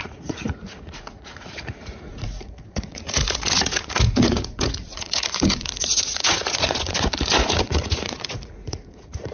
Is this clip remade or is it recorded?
remade